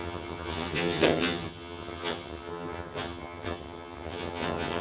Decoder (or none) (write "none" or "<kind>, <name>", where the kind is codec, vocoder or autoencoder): vocoder, HiFi-GAN